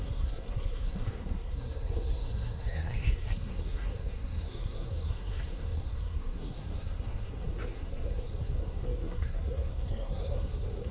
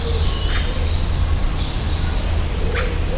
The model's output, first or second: first